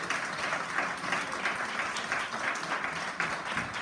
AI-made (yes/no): no